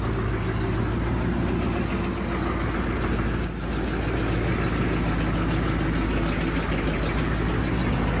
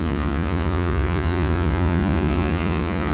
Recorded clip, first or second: first